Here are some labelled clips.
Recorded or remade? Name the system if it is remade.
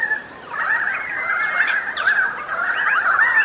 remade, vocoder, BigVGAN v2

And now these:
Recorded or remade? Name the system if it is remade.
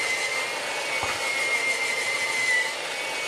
recorded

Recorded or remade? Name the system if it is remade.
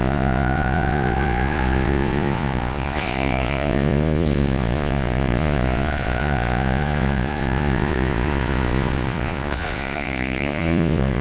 remade, vocoder, Vocos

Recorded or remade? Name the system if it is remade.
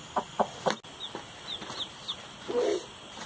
recorded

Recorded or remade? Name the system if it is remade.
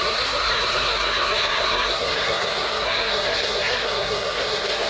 remade, codec, SNAC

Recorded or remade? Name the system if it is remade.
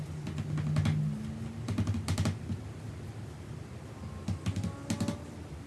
recorded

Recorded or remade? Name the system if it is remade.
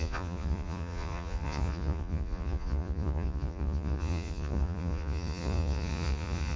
remade, vocoder, Vocos